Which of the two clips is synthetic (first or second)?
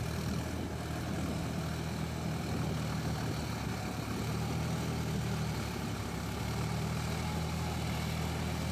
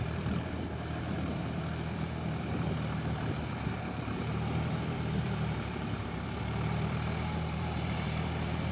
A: second